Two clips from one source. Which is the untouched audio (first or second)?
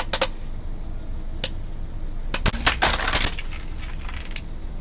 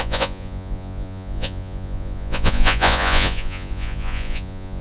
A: first